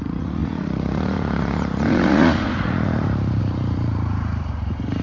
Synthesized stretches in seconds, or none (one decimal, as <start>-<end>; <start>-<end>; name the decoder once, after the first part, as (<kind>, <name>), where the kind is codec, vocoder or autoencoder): 0.0-5.0 (vocoder, Vocos)